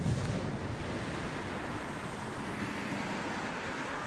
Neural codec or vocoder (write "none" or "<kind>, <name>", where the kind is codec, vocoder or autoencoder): none